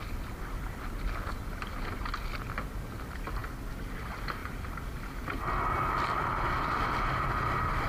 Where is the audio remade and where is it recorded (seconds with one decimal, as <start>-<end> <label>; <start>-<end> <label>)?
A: 0.0-7.9 recorded